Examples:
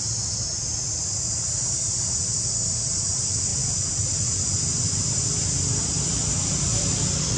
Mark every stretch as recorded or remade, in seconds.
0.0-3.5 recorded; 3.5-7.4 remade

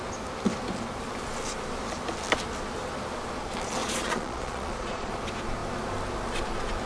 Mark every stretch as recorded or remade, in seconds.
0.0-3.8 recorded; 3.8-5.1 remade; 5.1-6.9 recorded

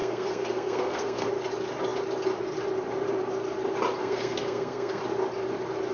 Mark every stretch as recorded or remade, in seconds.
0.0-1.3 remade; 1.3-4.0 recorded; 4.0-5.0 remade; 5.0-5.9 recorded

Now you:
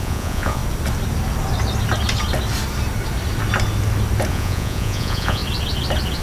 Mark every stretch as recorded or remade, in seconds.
0.0-0.6 remade; 0.6-4.3 recorded; 4.3-5.4 remade; 5.4-6.2 recorded